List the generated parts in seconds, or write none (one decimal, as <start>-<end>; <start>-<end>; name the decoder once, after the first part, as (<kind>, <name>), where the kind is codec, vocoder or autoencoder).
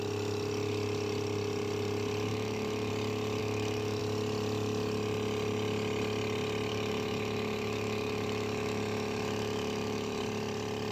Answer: 2.3-2.9 (autoencoder, DAC-VAE); 3.4-4.0; 6.7-10.2